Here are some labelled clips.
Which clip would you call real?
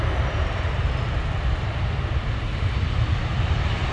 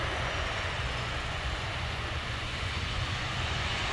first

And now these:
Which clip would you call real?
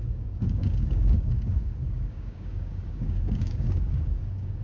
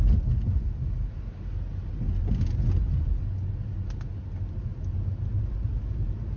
second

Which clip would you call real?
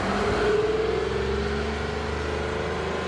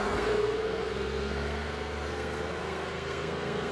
first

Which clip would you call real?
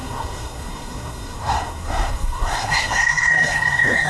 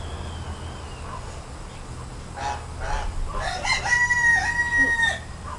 second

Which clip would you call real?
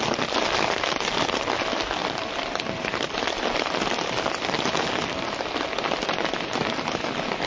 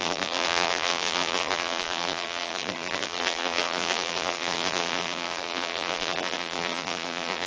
first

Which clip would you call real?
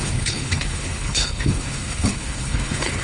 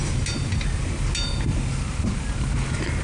second